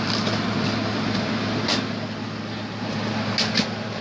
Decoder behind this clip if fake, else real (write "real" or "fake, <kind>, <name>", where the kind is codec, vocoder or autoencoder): real